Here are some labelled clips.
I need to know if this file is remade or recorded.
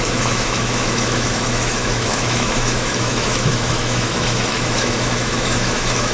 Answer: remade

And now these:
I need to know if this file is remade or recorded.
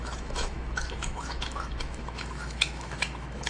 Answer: remade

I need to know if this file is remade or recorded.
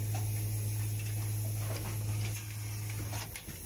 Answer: recorded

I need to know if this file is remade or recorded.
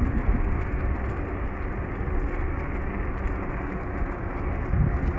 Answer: recorded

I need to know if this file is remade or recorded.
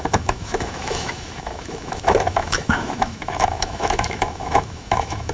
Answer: remade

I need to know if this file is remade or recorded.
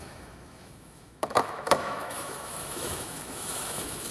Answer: remade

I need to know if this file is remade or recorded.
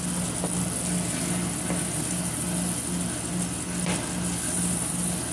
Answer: recorded